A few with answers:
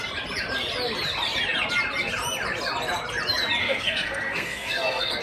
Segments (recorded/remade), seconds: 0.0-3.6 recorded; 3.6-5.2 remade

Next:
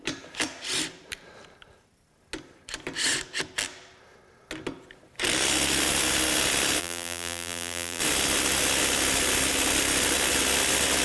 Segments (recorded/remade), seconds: 0.0-6.8 recorded; 6.8-8.0 remade; 8.0-11.0 recorded

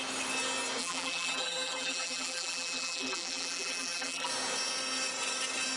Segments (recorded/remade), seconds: 0.0-0.8 recorded; 0.8-4.3 remade; 4.3-5.8 recorded